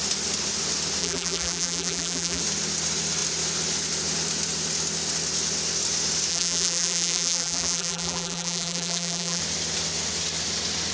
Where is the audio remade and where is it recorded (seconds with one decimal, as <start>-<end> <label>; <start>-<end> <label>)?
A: 0.0-1.0 recorded; 1.0-2.4 remade; 2.4-6.3 recorded; 6.3-9.4 remade; 9.4-10.9 recorded